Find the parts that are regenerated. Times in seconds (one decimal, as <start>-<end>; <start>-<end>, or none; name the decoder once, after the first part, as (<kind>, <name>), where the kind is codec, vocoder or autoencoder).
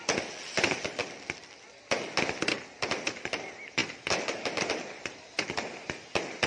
1.0-1.9 (vocoder, BigVGAN v2); 3.8-5.5